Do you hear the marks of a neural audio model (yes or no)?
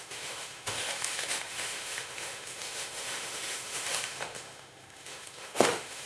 yes